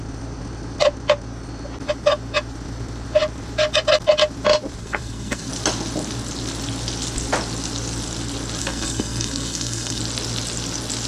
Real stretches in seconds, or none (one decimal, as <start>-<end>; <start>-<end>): 0.0-4.8; 5.5-8.6; 10.0-11.1